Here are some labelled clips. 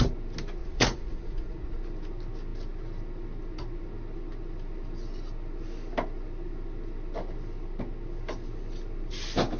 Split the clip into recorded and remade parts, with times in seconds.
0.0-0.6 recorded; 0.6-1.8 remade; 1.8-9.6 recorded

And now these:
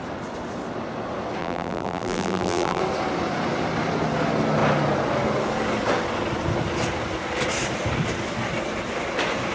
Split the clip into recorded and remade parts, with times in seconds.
0.0-1.4 recorded; 1.4-2.8 remade; 2.8-9.5 recorded

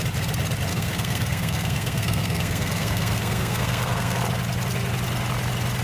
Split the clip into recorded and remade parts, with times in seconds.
0.0-0.7 recorded; 0.7-4.2 remade; 4.2-5.8 recorded

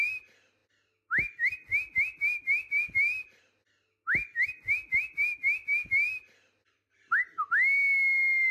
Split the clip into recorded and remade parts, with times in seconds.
0.0-8.5 recorded

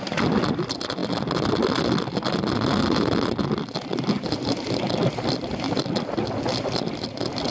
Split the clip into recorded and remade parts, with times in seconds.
0.0-7.5 recorded

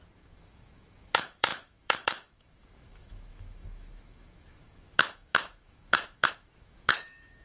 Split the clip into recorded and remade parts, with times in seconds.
0.0-7.4 remade

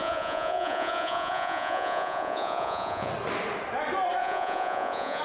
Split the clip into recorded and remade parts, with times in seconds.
0.0-3.1 remade; 3.1-4.2 recorded; 4.2-5.2 remade